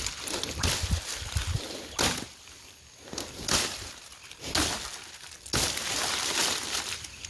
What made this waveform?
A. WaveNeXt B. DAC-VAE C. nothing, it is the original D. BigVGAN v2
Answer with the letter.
C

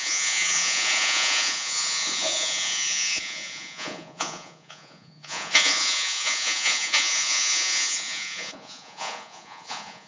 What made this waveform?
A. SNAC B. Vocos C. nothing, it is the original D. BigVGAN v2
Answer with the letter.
B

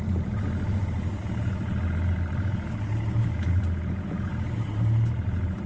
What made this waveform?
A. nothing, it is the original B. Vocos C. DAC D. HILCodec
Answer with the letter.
A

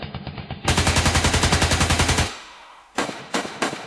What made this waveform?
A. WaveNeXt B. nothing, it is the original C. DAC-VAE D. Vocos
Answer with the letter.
C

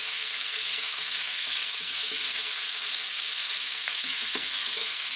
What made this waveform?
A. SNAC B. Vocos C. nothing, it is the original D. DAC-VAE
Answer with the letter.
A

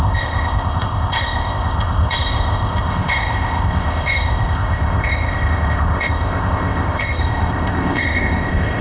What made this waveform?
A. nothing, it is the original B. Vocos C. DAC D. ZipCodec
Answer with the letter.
D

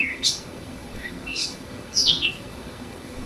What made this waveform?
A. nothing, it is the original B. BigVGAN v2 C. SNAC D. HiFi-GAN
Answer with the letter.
C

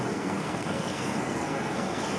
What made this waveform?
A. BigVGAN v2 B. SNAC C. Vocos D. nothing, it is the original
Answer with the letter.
B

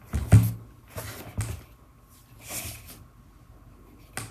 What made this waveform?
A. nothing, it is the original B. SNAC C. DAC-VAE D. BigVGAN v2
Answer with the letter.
A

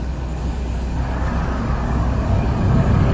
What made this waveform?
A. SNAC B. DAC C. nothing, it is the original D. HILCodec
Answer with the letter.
B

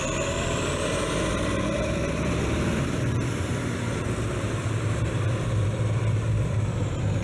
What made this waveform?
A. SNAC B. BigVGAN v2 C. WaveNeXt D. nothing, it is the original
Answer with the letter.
B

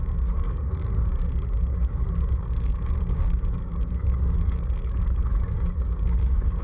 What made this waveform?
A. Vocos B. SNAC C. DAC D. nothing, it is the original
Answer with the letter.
C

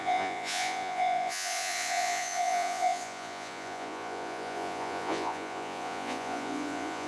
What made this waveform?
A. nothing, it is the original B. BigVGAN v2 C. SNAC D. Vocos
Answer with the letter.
D